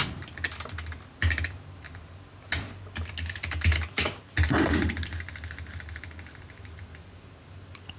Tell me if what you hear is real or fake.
real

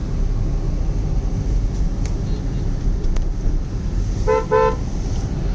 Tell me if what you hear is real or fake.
real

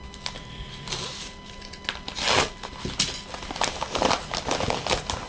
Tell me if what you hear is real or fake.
real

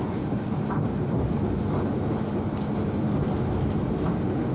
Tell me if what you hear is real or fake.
real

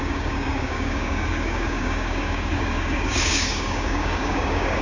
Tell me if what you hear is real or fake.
fake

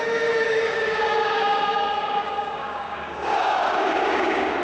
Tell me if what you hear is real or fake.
fake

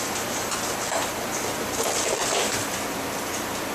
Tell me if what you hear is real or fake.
real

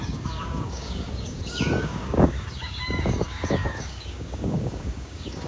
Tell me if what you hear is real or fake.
fake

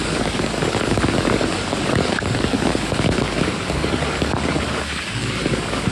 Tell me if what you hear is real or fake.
fake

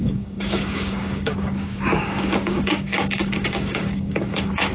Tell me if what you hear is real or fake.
fake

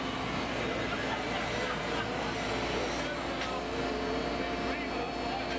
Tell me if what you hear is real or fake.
real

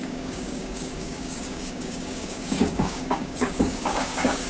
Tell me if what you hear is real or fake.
fake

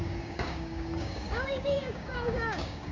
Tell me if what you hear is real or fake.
fake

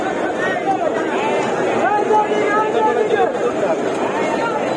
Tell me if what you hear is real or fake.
real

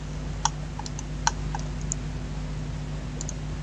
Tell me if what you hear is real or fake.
real